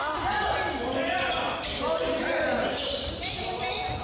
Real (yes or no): yes